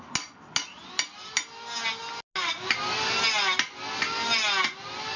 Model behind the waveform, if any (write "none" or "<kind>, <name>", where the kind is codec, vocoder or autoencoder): none